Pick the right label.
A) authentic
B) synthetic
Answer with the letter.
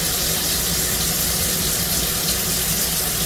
A